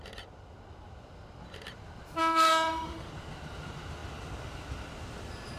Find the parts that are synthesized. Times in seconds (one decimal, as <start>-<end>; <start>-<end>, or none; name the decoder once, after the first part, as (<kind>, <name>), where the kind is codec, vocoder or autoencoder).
2.2-3.1 (autoencoder, DAC-VAE)